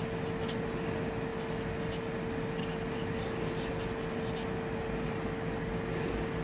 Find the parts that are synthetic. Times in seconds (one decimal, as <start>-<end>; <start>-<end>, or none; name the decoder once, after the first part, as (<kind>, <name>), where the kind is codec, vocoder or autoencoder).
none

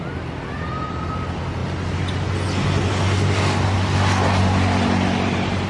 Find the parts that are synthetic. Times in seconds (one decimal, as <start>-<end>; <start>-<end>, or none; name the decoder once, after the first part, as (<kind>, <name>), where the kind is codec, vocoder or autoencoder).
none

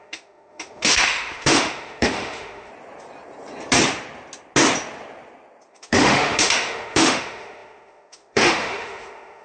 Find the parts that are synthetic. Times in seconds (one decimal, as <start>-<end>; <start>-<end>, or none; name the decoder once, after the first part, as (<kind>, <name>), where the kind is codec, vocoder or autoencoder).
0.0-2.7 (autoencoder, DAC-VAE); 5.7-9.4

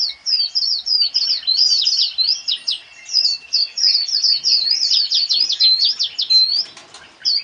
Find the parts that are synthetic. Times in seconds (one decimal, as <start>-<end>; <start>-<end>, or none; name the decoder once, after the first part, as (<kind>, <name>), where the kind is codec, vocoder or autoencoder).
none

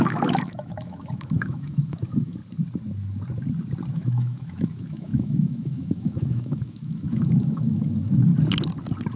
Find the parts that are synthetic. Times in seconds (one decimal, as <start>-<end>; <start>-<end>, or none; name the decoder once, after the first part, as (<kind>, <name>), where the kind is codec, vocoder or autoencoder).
0.0-2.4 (autoencoder, DAC-VAE); 3.9-8.3